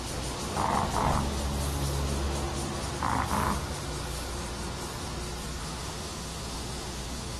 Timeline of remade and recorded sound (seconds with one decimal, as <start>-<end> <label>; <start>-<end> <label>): 0.0-5.6 recorded; 5.6-7.4 remade